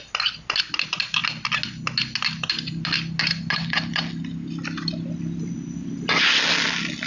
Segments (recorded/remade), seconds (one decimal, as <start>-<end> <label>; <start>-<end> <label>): 0.0-7.1 recorded